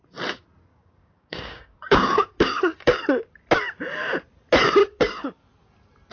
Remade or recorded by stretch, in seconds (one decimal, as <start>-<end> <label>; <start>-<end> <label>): 0.0-0.7 recorded; 0.7-3.0 remade; 3.0-4.8 recorded; 4.8-5.4 remade; 5.4-6.1 recorded